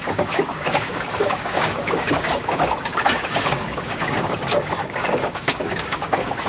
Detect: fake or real fake